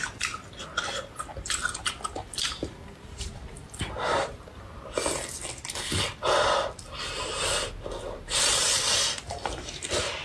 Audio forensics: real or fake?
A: real